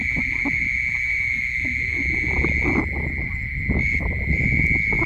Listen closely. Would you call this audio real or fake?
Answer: real